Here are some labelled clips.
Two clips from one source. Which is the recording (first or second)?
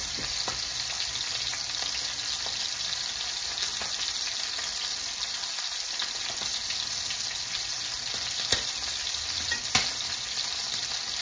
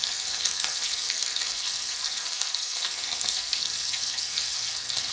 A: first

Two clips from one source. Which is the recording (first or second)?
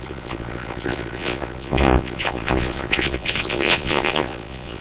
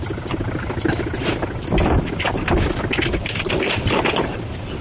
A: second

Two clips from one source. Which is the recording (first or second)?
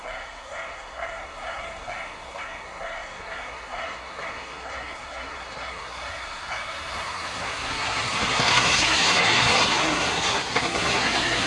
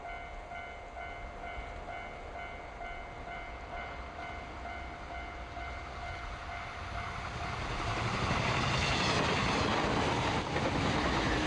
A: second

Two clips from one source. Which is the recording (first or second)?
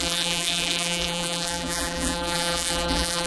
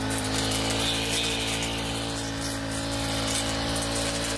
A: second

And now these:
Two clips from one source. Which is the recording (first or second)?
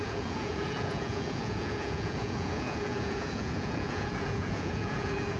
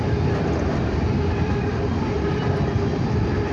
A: second